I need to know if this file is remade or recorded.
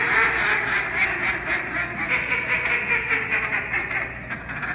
recorded